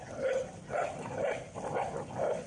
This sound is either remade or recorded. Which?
recorded